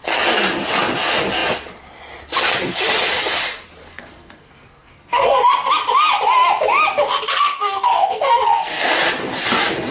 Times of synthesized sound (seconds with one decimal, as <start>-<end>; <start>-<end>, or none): 3.8-5.7; 7.3-8.9